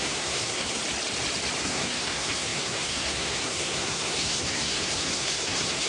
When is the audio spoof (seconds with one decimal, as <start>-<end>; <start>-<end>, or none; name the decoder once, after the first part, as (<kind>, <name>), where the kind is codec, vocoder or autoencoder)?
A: 0.0-0.8 (codec, SNAC); 1.6-5.9